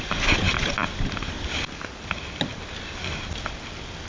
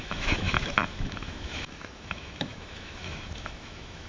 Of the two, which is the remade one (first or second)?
second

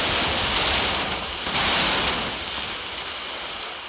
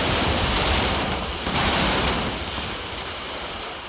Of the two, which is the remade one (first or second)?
second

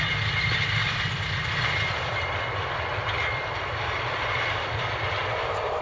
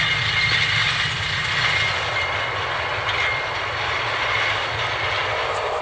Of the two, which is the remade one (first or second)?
first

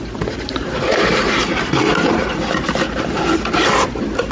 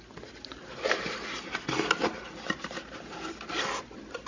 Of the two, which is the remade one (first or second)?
first